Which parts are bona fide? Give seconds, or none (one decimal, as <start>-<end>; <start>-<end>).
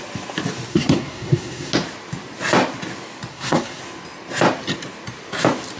0.0-0.7; 1.7-3.3; 3.8-5.8